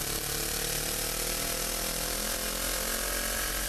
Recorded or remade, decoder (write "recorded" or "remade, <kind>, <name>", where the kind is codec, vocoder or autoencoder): recorded